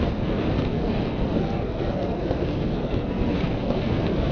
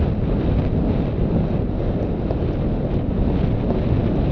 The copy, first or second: first